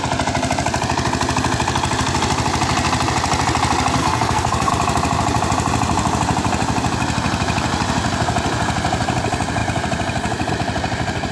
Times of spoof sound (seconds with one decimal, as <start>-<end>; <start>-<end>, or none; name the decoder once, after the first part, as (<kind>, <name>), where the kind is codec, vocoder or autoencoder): 4.0-4.7 (codec, SNAC)